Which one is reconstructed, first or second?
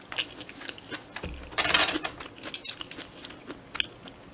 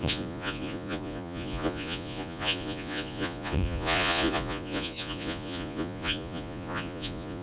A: second